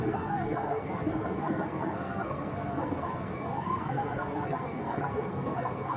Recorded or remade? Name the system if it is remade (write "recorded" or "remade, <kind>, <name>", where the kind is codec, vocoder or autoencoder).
remade, codec, SNAC